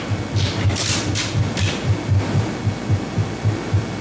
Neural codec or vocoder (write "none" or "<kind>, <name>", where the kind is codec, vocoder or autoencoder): none